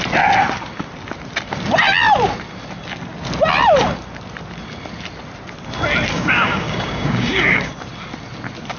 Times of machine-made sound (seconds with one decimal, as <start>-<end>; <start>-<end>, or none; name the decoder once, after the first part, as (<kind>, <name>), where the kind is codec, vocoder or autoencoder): 6.1-7.7 (codec, DAC)

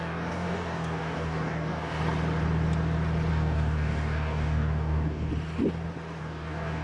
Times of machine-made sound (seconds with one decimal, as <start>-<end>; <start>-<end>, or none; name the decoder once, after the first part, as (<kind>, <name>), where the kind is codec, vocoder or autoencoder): 0.0-2.0 (codec, DAC); 3.3-5.3; 6.2-6.8